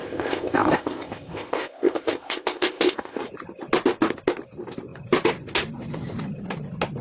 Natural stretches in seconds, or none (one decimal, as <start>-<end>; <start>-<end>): 3.2-7.0